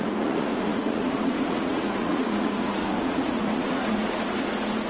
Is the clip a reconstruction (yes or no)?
yes